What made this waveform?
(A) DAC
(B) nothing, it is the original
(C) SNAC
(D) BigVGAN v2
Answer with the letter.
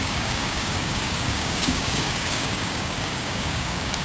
A